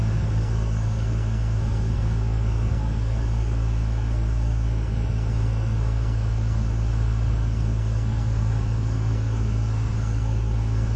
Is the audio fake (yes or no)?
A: yes